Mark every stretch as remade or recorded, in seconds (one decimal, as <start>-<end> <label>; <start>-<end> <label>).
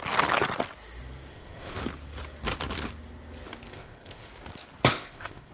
0.0-1.3 recorded; 1.3-1.8 remade; 1.8-3.7 recorded; 3.7-4.3 remade; 4.3-4.9 recorded; 4.9-5.5 remade